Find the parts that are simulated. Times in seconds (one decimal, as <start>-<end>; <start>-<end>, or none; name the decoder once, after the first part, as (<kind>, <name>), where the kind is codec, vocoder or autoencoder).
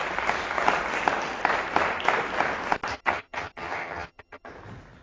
2.9-4.5 (vocoder, HiFi-GAN)